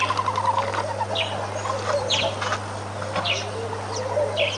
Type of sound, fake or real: real